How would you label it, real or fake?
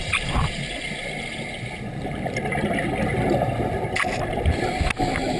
real